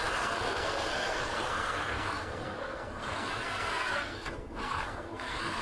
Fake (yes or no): yes